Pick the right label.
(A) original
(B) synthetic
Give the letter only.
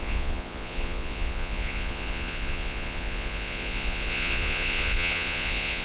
B